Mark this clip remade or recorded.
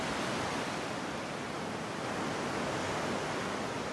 recorded